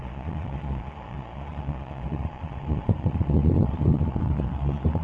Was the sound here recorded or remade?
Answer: remade